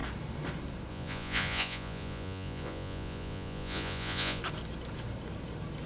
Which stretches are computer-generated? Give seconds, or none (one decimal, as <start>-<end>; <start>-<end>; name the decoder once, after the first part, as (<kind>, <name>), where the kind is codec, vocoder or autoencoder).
0.9-4.4 (vocoder, Vocos)

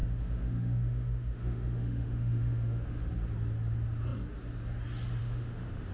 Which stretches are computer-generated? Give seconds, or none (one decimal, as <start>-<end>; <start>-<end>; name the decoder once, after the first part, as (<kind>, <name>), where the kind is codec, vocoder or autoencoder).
0.0-3.1 (autoencoder, DAC-VAE); 5.2-5.9

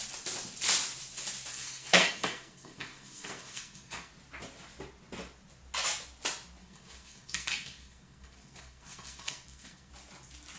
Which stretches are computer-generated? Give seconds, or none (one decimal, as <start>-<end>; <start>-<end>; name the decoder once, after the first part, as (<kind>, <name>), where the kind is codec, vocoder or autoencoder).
1.5-4.1 (codec, SNAC); 6.6-9.9

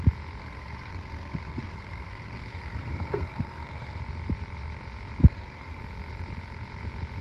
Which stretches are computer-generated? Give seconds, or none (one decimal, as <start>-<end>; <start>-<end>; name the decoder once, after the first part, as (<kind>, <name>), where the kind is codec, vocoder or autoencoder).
0.4-4.0 (codec, SNAC); 5.2-5.8

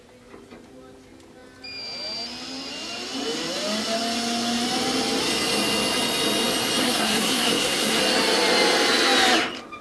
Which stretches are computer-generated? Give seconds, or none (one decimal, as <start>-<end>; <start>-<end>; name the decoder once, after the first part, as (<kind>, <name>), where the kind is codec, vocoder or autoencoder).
6.8-8.0 (codec, SNAC)

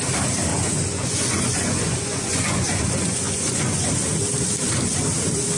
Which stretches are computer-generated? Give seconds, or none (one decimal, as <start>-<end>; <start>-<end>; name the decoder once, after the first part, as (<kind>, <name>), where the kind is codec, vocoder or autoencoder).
0.5-3.9 (vocoder, Vocos)

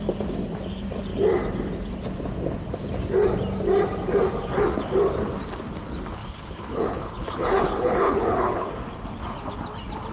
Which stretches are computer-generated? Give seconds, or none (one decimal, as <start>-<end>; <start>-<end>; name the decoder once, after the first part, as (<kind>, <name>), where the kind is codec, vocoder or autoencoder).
6.2-8.7 (codec, HILCodec)